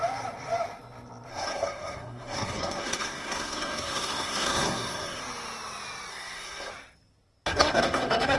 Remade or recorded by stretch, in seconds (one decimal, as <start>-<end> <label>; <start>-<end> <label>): 0.0-1.3 recorded; 1.3-5.2 remade; 5.2-6.1 recorded; 6.1-6.7 remade; 6.7-7.5 recorded; 7.5-8.4 remade